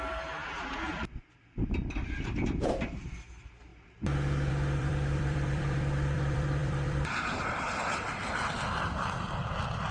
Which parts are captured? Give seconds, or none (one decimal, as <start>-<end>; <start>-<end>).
0.4-3.3; 3.7-4.5